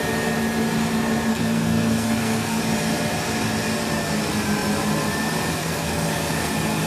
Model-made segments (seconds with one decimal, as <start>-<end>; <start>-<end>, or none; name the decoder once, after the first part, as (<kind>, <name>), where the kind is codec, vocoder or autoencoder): 1.3-2.6 (codec, SNAC); 5.6-6.5